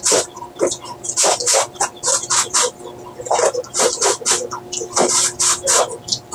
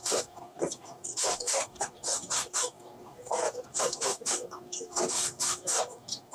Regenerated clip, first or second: second